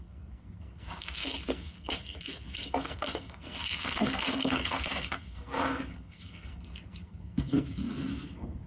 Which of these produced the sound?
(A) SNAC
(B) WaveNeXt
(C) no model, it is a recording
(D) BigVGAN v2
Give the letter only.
A